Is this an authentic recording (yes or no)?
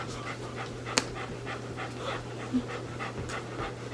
yes